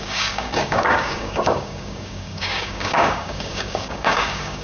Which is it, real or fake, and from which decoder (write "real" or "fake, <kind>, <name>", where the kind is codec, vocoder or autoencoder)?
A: fake, codec, DAC